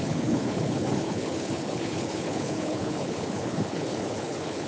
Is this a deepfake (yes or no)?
yes